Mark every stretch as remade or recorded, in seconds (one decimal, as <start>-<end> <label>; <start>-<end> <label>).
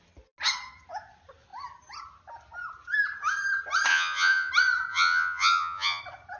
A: 0.0-3.9 recorded; 3.9-4.5 remade; 4.5-4.9 recorded; 4.9-6.0 remade; 6.0-6.4 recorded